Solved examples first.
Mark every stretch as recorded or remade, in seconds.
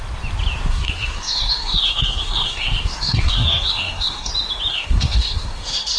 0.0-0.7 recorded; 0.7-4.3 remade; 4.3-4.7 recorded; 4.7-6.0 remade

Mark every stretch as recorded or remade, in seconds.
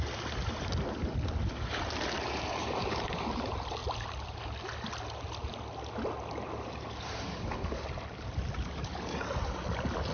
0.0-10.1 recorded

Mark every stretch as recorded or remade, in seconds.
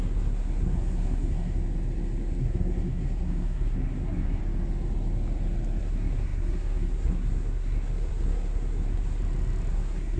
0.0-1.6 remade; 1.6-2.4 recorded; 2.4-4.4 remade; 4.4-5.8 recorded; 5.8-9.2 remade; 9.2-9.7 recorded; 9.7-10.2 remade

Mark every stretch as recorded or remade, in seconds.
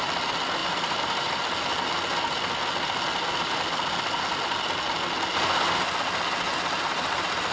0.0-0.6 recorded; 0.6-1.3 remade; 1.3-7.5 recorded